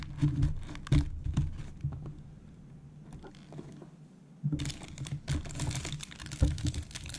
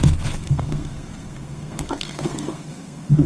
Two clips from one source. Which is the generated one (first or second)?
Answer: second